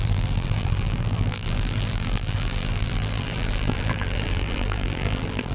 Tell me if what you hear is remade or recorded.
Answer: remade